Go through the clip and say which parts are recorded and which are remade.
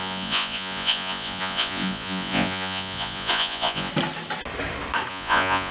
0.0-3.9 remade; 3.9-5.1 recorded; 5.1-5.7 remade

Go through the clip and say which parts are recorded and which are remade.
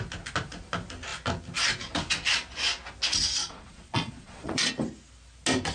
0.0-3.4 recorded; 3.4-4.7 remade; 4.7-5.7 recorded